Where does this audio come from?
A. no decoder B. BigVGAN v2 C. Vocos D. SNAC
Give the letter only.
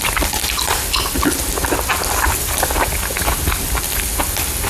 A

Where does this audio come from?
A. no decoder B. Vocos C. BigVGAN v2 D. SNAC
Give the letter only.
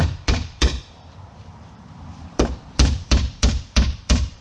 C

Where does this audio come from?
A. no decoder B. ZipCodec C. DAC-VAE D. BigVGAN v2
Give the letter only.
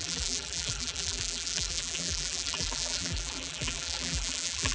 D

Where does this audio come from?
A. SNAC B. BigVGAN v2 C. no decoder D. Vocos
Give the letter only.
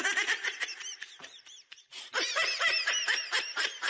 B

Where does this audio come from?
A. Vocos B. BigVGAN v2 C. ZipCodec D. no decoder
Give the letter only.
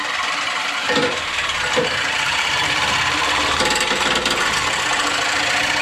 B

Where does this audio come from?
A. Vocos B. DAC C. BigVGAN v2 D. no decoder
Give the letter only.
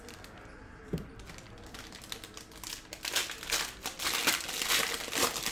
D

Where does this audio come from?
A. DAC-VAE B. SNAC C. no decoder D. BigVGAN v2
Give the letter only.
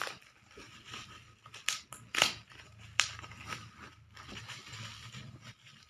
D